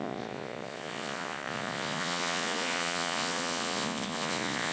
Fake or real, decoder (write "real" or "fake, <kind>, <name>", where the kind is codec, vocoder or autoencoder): fake, vocoder, Vocos